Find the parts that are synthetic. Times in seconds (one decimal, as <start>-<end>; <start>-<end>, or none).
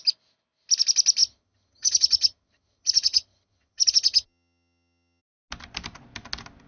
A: 1.2-5.2